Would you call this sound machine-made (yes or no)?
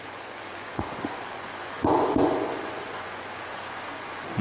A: yes